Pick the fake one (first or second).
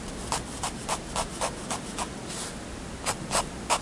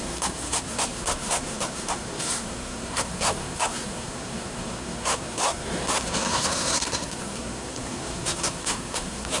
second